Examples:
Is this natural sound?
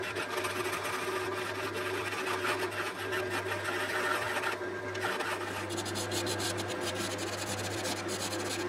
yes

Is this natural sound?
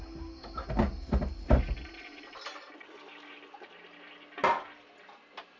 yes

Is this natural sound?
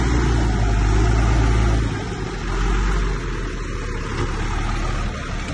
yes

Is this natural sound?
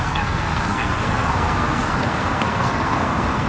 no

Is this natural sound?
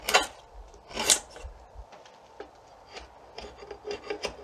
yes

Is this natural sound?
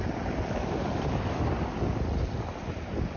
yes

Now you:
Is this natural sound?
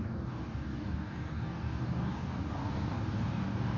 no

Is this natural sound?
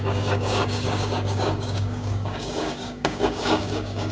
no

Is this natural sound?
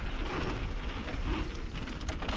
yes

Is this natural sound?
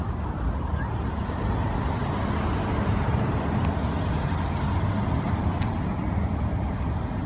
yes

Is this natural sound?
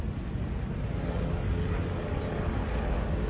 yes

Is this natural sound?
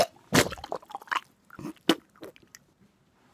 yes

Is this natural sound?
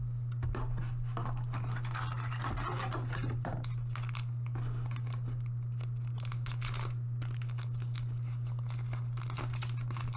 yes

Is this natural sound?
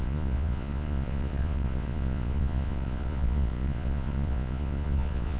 no